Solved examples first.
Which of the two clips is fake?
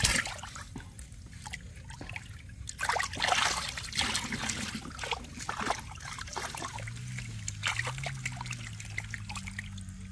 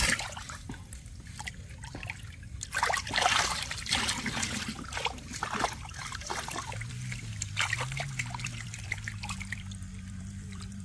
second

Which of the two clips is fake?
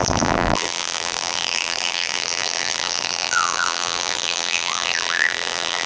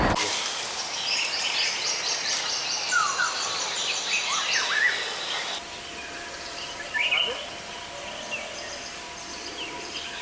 first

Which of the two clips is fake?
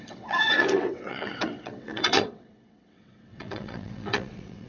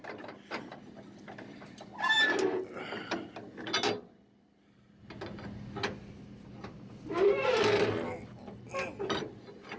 first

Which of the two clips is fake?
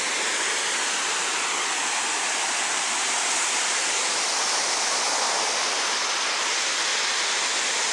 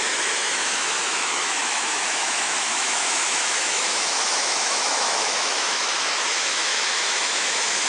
second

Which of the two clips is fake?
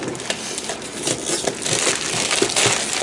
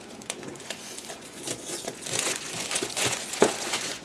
second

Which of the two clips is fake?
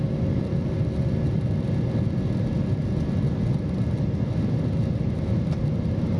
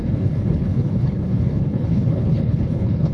second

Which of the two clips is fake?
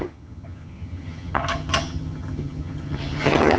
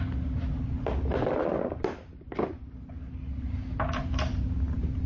first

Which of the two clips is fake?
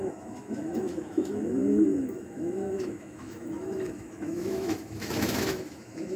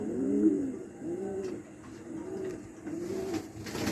first